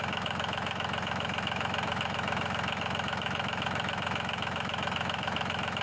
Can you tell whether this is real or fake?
fake